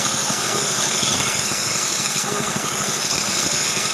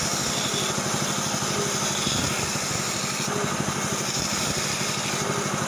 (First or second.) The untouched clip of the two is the second